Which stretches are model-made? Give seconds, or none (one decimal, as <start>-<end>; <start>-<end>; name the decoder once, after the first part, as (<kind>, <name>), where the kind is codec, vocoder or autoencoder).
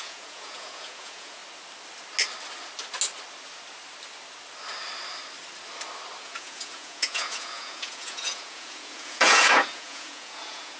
0.0-1.4 (vocoder, Vocos); 6.2-10.8